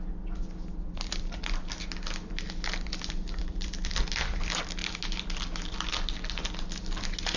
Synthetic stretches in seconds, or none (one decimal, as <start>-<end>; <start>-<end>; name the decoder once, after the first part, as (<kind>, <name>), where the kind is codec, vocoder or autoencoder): 0.7-1.4 (vocoder, BigVGAN v2)